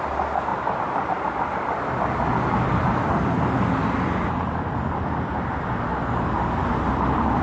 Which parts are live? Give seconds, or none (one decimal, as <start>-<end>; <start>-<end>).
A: 0.0-7.4